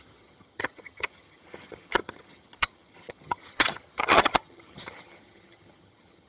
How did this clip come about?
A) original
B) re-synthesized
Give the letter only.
B